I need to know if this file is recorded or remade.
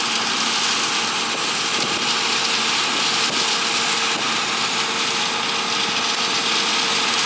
recorded